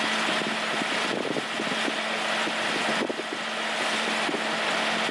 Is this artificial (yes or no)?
no